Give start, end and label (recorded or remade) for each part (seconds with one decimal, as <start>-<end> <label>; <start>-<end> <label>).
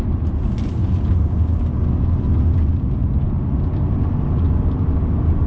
0.0-5.5 recorded